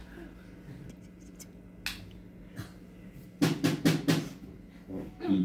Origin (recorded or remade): recorded